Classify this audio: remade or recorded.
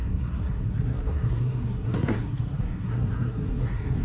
remade